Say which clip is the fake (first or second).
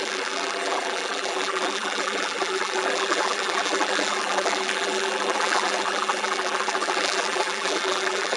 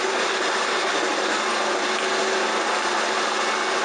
first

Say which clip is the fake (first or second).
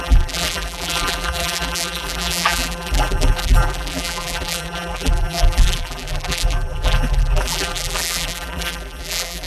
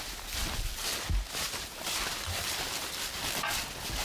first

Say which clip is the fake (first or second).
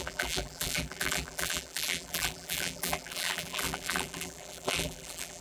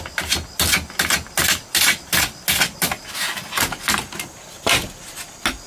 first